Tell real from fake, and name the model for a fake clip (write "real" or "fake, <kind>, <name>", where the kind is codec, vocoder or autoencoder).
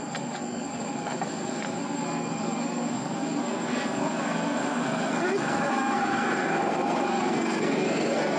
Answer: fake, codec, SNAC